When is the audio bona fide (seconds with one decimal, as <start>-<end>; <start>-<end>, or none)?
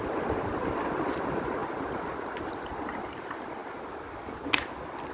0.0-5.1